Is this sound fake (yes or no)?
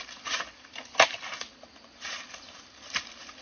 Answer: no